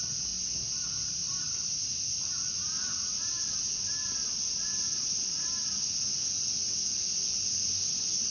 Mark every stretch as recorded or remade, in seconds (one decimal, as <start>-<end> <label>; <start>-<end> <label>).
0.0-1.2 recorded; 1.2-3.3 remade; 3.3-8.3 recorded